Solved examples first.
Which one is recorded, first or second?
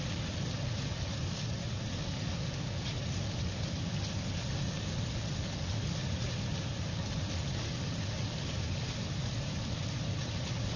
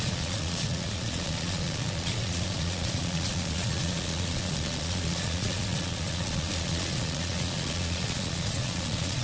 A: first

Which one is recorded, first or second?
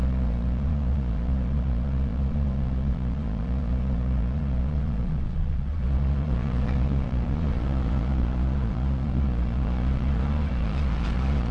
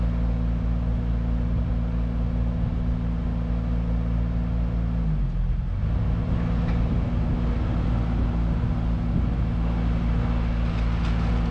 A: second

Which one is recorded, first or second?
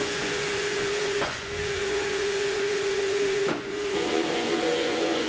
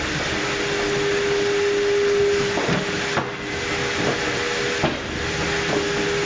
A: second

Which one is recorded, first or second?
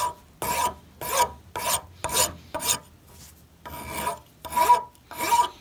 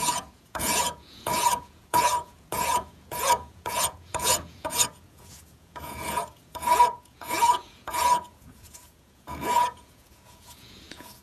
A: first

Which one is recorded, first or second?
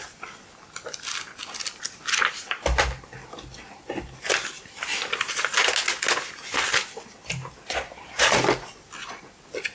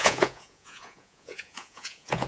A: first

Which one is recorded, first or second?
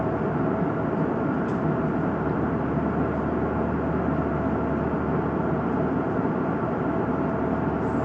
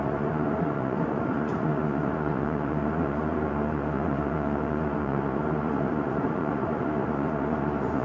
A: first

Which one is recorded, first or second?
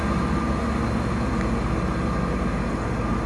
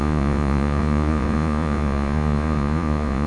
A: first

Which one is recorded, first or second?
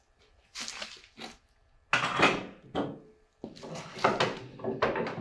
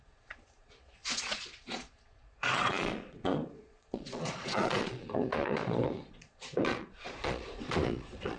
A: first